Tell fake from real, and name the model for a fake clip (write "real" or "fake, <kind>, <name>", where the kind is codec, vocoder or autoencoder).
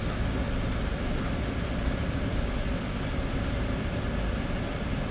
real